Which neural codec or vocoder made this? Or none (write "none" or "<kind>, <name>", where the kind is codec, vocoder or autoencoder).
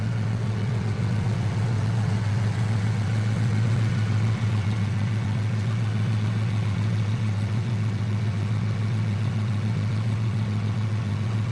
vocoder, WaveNeXt